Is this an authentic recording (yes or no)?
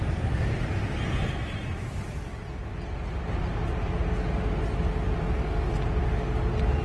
yes